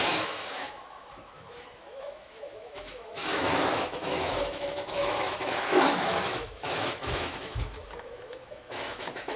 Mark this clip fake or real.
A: fake